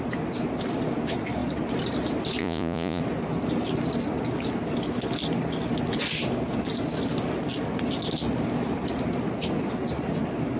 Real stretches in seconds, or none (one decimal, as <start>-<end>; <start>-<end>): 0.0-2.4; 3.0-10.6